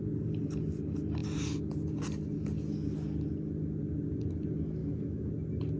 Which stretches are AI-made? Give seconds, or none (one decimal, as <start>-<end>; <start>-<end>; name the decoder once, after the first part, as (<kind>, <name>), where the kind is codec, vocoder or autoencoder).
4.8-5.3 (autoencoder, DAC-VAE)